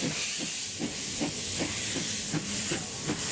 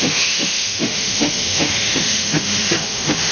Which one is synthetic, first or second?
second